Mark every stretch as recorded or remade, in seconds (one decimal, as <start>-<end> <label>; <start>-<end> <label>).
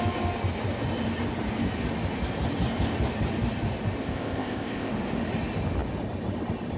0.0-4.0 recorded; 4.0-4.9 remade; 4.9-6.8 recorded